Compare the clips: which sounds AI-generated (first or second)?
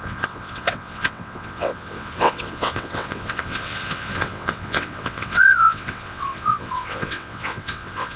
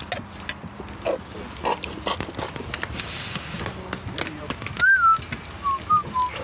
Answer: first